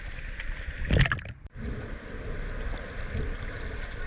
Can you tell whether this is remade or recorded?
recorded